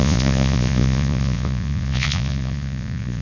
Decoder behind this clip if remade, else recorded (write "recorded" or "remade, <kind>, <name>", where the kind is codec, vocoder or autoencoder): remade, vocoder, Vocos